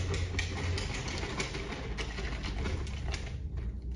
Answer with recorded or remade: recorded